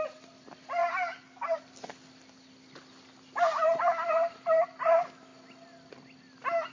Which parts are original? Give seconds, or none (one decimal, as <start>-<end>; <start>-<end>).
0.8-1.6; 5.3-6.7